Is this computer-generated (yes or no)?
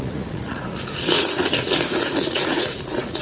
yes